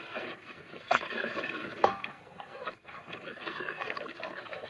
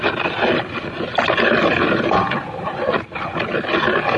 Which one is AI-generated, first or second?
first